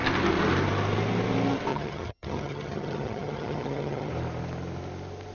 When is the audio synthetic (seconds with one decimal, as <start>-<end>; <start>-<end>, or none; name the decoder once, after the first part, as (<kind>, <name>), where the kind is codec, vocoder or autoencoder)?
1.7-4.1 (vocoder, HiFi-GAN)